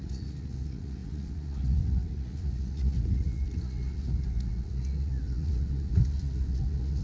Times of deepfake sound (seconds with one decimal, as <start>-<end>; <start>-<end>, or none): 0.0-7.0